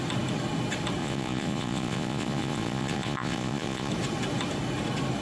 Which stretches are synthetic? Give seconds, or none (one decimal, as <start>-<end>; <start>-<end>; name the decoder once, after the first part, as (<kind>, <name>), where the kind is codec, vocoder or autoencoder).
1.0-3.9 (vocoder, Vocos)